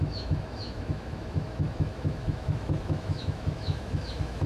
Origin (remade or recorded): remade